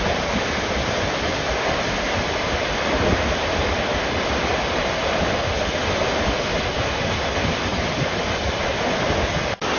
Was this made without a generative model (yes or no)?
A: yes